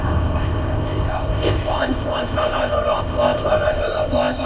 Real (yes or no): no